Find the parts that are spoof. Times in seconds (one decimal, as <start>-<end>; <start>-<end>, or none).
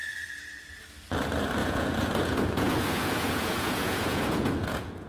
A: 1.6-5.1